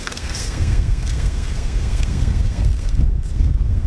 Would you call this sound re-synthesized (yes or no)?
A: yes